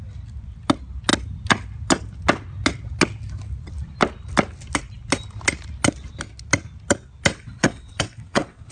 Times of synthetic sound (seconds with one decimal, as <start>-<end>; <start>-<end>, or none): 7.3-8.7